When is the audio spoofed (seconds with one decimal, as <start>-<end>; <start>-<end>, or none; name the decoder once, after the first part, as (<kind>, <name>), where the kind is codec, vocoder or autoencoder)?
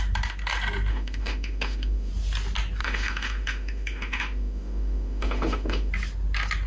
0.9-2.1 (autoencoder, DAC-VAE); 2.8-5.9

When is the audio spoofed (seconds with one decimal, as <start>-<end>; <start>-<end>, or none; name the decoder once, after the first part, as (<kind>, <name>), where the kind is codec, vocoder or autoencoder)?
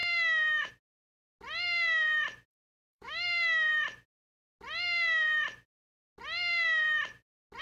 0.0-0.7 (autoencoder, DAC-VAE); 2.5-3.7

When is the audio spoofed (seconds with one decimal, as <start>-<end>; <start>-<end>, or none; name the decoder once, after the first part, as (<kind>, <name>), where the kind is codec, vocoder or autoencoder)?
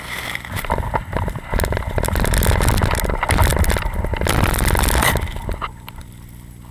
none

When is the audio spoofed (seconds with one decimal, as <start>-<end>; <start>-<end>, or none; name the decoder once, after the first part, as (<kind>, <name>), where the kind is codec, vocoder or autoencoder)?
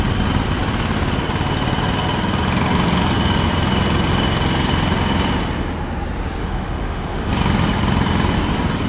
6.4-7.3 (autoencoder, DAC-VAE)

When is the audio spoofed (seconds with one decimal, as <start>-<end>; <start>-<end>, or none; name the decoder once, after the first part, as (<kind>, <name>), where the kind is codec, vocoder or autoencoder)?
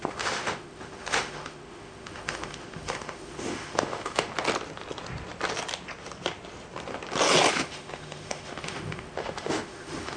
0.0-4.3 (autoencoder, DAC-VAE); 7.5-10.2